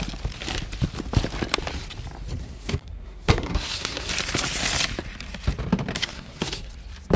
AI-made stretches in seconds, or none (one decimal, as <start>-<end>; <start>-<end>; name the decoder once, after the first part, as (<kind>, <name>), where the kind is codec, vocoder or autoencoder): 2.4-4.1 (codec, SNAC); 6.0-6.7